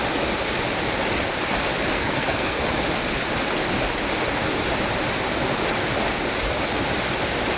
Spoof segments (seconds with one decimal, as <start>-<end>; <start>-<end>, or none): 1.9-2.6